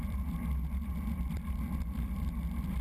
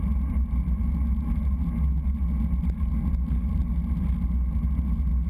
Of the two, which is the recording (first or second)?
second